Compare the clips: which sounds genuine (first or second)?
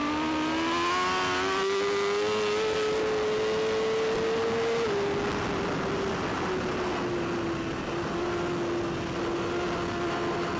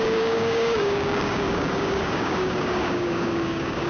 first